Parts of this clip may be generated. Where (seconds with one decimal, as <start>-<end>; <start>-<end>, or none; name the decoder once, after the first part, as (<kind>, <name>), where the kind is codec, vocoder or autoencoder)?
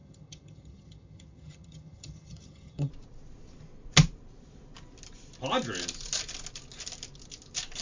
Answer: 0.0-2.9 (vocoder, HiFi-GAN)